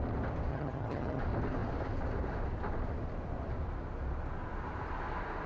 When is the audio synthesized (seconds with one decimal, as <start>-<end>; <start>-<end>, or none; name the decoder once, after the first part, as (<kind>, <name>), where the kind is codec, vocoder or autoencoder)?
0.5-1.2 (vocoder, HiFi-GAN)